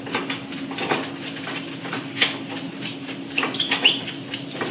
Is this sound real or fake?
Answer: real